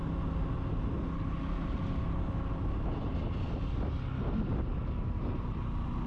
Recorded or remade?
recorded